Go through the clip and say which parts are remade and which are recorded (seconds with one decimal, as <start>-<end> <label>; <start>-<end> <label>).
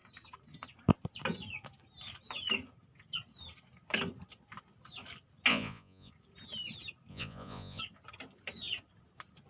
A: 0.0-5.5 recorded; 5.5-6.1 remade; 6.1-7.1 recorded; 7.1-7.8 remade; 7.8-9.5 recorded